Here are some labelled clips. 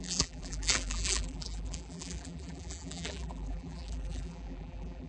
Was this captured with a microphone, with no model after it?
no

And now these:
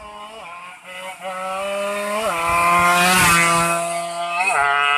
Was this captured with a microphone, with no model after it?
yes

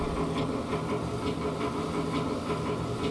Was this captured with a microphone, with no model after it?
yes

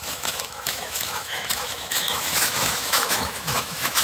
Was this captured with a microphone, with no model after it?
no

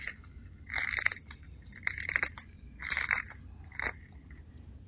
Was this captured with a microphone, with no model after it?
no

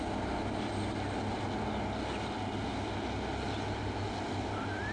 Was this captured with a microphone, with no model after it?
yes